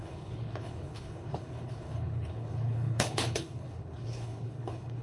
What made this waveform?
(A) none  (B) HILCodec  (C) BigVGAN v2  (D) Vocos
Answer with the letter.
B